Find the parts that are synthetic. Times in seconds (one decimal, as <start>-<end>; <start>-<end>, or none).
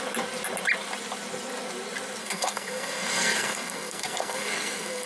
2.2-5.1